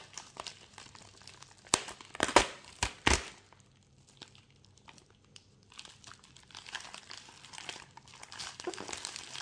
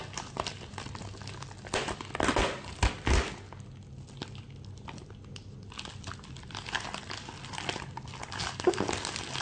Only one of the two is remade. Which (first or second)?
first